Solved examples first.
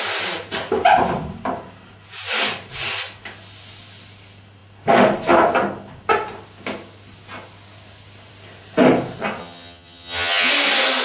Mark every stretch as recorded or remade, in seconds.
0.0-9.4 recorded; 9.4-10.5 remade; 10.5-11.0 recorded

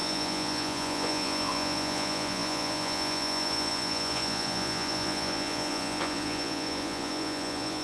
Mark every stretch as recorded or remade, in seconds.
0.0-7.8 remade

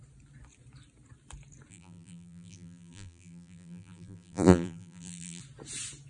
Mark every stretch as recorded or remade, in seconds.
0.0-1.7 recorded; 1.7-5.4 remade; 5.4-6.1 recorded

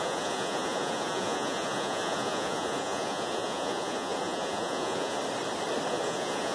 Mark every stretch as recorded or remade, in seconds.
0.0-5.2 remade; 5.2-5.9 recorded; 5.9-6.5 remade

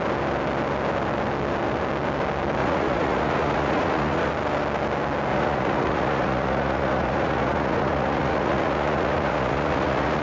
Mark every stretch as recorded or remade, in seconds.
0.0-2.6 recorded; 2.6-4.3 remade; 4.3-5.3 recorded; 5.3-10.2 remade

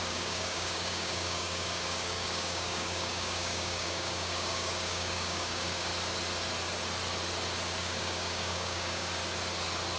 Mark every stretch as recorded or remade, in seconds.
0.0-5.9 remade; 5.9-7.8 recorded; 7.8-9.2 remade; 9.2-10.0 recorded

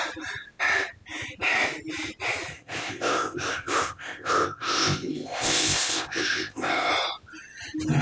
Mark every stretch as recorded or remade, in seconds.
0.0-2.5 recorded; 2.5-6.9 remade; 6.9-8.0 recorded

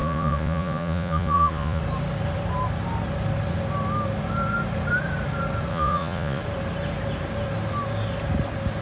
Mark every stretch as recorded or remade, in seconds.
0.0-1.8 remade; 1.8-5.7 recorded; 5.7-6.4 remade; 6.4-8.8 recorded